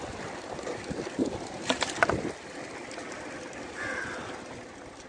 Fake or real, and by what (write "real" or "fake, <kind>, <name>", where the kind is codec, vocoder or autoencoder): real